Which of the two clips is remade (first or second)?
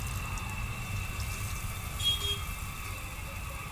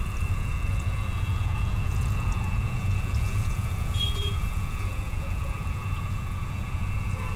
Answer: second